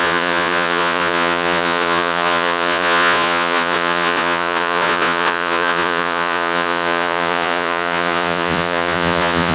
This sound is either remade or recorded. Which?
remade